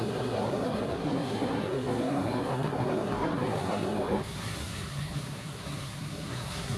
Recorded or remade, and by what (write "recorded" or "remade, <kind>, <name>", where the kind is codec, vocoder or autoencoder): remade, codec, SNAC